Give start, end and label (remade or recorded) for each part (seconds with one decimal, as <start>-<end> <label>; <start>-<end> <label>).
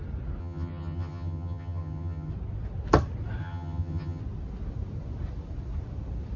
0.0-0.4 recorded; 0.4-2.3 remade; 2.3-3.4 recorded; 3.4-4.2 remade; 4.2-6.4 recorded